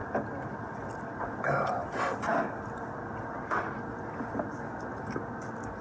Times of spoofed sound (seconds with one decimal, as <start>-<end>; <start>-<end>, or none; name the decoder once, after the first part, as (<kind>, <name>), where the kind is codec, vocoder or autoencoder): none